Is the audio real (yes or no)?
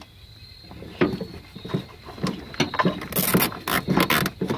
yes